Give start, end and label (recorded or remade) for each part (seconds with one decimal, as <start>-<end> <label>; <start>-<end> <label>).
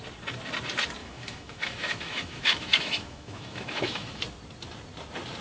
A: 0.0-1.0 recorded; 1.0-4.2 remade; 4.2-5.4 recorded